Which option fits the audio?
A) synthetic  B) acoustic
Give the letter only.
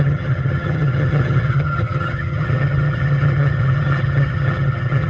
A